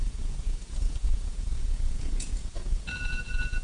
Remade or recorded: remade